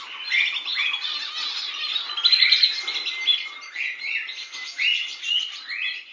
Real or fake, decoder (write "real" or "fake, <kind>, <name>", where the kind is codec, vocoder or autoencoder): real